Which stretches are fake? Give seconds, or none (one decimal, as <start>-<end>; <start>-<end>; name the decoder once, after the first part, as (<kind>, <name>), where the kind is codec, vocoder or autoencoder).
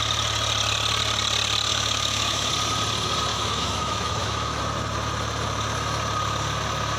1.7-2.5 (autoencoder, DAC-VAE); 3.3-4.6